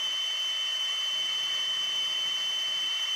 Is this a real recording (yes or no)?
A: yes